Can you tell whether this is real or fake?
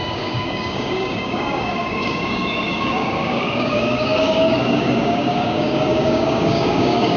fake